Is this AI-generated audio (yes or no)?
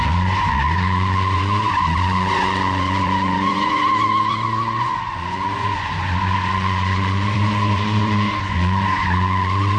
yes